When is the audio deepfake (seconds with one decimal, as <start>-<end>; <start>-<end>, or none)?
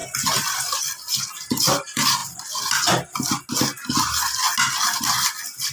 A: none